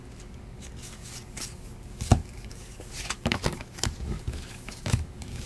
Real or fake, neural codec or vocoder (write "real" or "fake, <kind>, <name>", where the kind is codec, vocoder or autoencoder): fake, codec, DAC